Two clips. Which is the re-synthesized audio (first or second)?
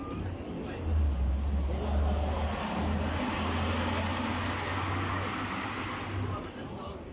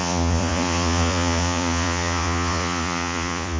second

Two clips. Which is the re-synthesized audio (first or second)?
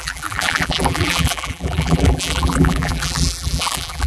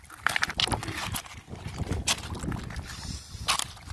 first